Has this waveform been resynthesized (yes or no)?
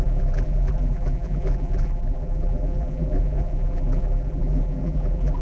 yes